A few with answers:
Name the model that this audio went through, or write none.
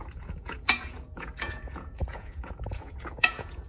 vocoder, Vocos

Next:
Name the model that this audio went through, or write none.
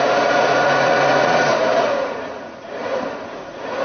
vocoder, Vocos